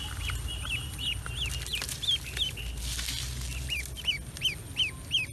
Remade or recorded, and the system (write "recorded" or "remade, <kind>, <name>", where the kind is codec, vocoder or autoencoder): recorded